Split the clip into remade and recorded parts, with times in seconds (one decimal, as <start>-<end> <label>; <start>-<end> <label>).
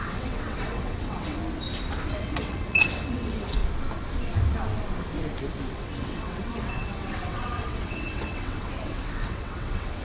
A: 0.0-1.4 remade; 1.4-2.1 recorded; 2.1-3.6 remade; 3.6-5.7 recorded; 5.7-10.0 remade